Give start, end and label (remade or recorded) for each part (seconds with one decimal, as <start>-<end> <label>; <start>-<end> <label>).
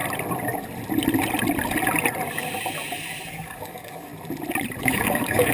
0.0-3.3 recorded; 3.3-4.1 remade; 4.1-4.8 recorded; 4.8-5.5 remade